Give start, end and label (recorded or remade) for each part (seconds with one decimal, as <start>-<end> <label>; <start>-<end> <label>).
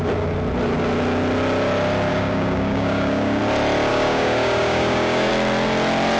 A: 0.0-2.1 recorded; 2.1-3.4 remade; 3.4-3.9 recorded; 3.9-5.3 remade; 5.3-6.2 recorded